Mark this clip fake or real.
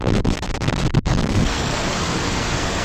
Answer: fake